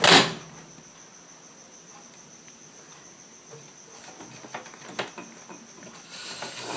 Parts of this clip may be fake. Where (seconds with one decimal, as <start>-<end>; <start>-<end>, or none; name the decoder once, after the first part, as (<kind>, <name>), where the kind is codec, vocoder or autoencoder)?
none